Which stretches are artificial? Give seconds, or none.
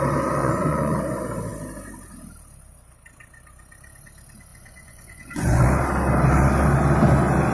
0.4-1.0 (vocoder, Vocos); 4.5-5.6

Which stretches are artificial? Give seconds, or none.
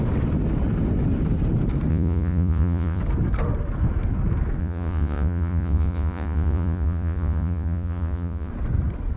1.9-3.0 (vocoder, Vocos); 4.6-8.5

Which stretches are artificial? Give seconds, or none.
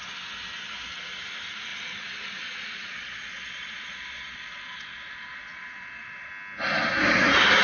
1.7-6.3 (vocoder, Vocos)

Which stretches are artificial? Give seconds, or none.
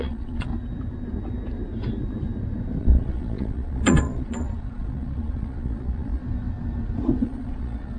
0.0-0.5 (vocoder, Vocos); 2.8-6.2; 7.2-8.0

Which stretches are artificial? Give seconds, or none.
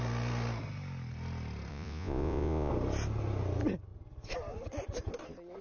1.7-2.7 (vocoder, Vocos)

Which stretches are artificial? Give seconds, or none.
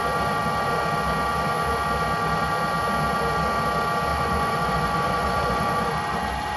4.1-5.9 (vocoder, Vocos)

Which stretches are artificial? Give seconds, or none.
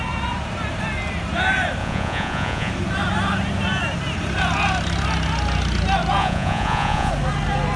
1.8-2.7 (vocoder, Vocos); 6.2-7.1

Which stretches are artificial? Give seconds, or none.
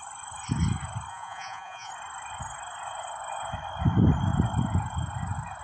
1.1-1.9 (vocoder, Vocos)